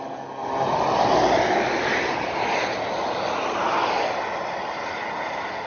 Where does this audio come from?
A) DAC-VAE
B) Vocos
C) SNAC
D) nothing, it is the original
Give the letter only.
D